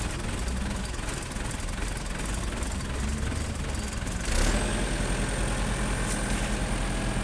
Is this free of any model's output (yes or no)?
yes